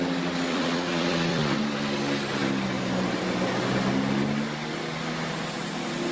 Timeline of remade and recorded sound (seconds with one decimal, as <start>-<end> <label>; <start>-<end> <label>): 0.0-0.5 recorded; 0.5-1.6 remade; 1.6-6.1 recorded